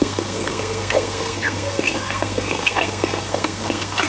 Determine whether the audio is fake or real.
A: fake